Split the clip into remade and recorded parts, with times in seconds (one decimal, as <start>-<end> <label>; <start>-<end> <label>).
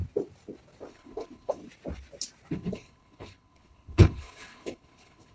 0.0-0.9 recorded; 0.9-1.6 remade; 1.6-2.5 recorded; 2.5-5.3 remade